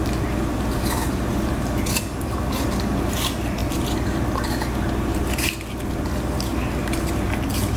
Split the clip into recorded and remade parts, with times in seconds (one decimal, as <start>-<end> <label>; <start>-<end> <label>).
0.0-7.8 recorded